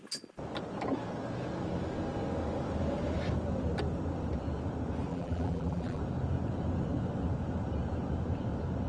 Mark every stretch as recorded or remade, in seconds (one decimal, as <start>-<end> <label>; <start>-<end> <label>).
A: 0.0-5.1 recorded; 5.1-6.0 remade; 6.0-8.9 recorded